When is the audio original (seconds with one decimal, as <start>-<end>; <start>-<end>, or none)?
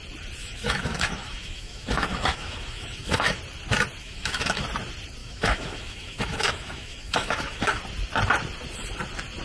0.0-0.4; 3.4-4.0; 4.6-5.2; 7.8-9.4